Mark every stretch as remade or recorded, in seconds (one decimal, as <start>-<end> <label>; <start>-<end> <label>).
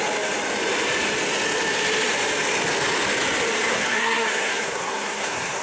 0.0-3.7 recorded; 3.7-5.6 remade